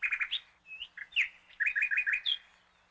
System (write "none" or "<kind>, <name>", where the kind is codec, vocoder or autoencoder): none